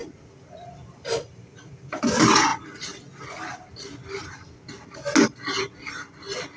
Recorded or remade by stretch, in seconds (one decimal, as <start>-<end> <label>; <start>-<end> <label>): 0.0-6.6 recorded